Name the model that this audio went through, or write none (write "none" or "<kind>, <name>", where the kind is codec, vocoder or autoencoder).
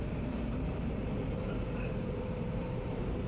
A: vocoder, BigVGAN v2